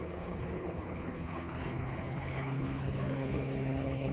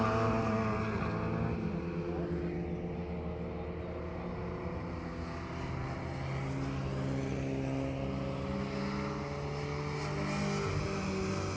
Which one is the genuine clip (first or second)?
second